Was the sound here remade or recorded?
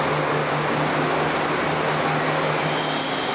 recorded